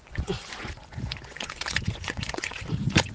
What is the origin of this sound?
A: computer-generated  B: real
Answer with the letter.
A